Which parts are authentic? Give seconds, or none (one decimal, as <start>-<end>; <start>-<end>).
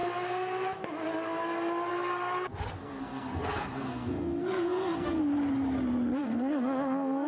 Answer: 0.0-2.8; 5.2-6.2